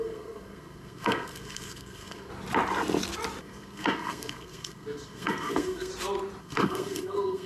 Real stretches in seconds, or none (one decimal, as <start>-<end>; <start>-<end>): 2.3-3.4; 5.9-6.4

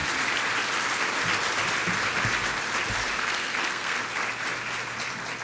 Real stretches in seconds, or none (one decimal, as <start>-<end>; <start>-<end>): 0.0-3.2; 4.0-5.4